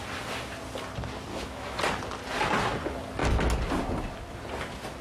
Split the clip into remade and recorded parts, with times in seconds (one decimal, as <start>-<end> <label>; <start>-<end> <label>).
0.0-1.3 recorded; 1.3-1.8 remade; 1.8-5.0 recorded